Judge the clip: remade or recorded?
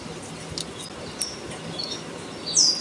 recorded